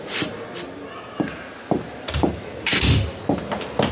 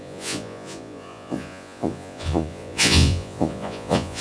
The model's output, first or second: second